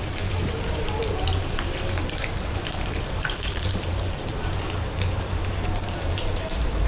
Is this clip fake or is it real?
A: fake